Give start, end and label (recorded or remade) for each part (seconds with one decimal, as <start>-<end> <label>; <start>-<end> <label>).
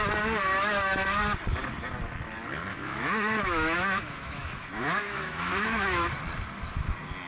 0.0-0.4 recorded; 0.4-1.2 remade; 1.2-2.7 recorded; 2.7-6.2 remade; 6.2-7.3 recorded